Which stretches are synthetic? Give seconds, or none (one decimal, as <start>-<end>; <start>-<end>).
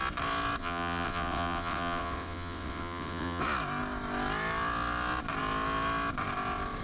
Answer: 0.6-3.4